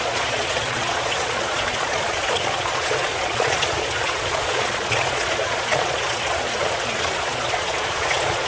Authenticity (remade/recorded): remade